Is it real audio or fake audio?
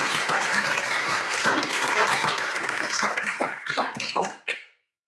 fake